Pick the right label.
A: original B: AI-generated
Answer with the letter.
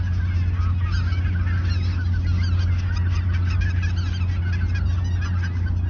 A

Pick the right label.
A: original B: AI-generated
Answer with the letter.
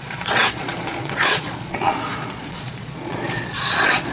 B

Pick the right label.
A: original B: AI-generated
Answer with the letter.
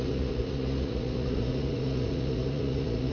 B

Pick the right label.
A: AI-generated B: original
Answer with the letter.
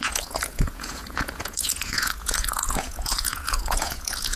A